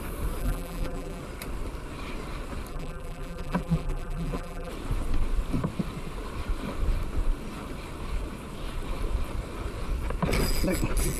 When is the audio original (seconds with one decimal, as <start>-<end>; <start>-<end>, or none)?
0.0-0.4; 1.2-2.7; 4.7-11.2